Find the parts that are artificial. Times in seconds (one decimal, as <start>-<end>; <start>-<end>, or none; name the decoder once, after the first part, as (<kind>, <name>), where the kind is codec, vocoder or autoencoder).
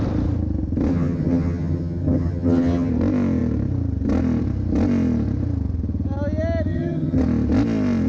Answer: 0.9-2.9 (vocoder, HiFi-GAN); 6.7-7.2